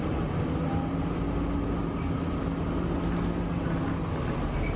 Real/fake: real